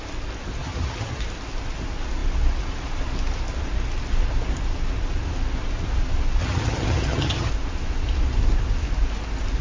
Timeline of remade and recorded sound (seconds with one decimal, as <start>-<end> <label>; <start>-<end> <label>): 0.0-0.6 recorded; 0.6-1.2 remade; 1.2-6.4 recorded; 6.4-7.5 remade; 7.5-9.6 recorded